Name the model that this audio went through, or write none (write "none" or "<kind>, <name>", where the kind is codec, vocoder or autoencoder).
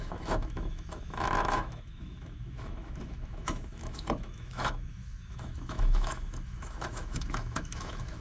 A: autoencoder, DAC-VAE